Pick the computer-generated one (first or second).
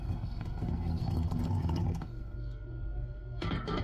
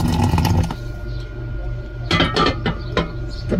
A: first